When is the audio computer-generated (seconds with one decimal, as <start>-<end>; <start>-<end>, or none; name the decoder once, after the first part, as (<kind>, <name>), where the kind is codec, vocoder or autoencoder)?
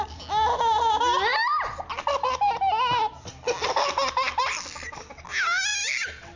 none